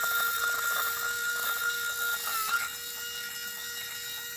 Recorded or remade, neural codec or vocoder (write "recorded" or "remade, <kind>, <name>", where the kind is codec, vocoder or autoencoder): recorded